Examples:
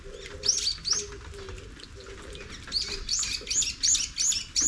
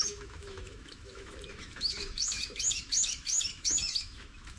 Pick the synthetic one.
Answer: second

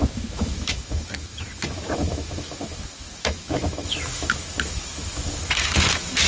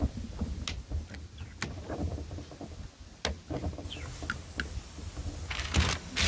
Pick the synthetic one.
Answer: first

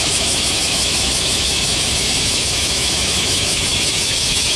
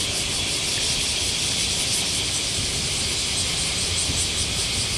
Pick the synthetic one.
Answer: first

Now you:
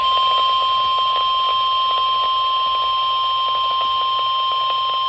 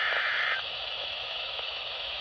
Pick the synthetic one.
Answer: second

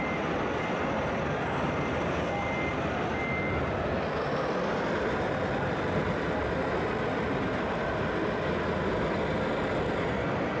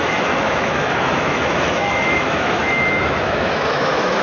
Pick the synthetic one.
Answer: second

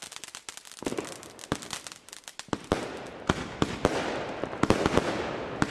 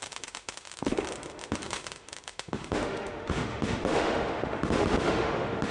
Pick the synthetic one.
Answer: second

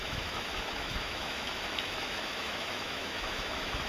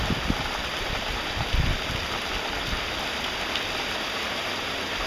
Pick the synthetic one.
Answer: first